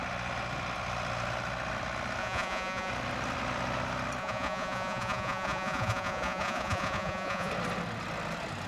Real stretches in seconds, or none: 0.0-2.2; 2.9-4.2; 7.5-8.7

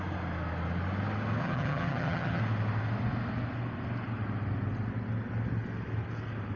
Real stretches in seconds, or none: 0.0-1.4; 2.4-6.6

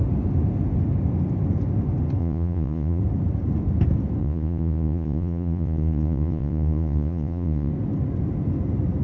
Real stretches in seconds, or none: 0.0-2.2; 3.0-4.2; 7.7-9.0

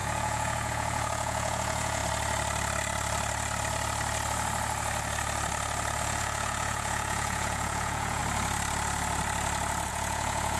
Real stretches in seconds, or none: 2.0-6.0; 8.2-9.9

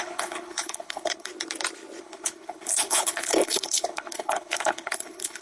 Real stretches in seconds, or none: 1.3-2.0

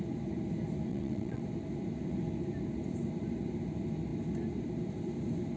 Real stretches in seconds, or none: 0.0-0.9; 1.4-5.6